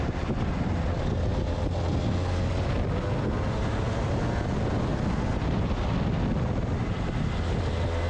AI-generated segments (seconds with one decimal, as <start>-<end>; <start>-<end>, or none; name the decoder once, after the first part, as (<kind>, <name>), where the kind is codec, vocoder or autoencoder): none

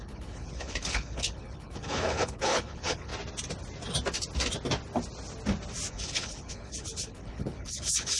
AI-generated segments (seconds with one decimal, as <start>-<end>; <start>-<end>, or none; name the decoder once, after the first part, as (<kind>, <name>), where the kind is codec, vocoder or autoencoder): 0.0-3.1 (codec, HILCodec); 5.9-8.2

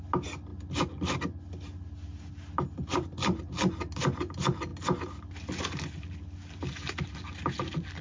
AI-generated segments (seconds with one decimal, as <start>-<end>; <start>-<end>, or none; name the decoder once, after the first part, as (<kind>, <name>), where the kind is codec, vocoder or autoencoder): none

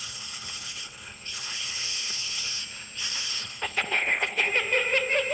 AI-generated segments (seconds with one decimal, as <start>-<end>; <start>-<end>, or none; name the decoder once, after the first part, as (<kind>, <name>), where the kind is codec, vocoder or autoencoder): 0.0-2.6 (codec, HILCodec); 3.2-4.5

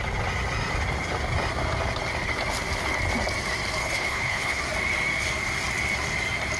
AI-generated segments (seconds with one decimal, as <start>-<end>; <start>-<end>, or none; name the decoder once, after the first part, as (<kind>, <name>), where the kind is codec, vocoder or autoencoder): 3.8-4.6 (codec, HILCodec)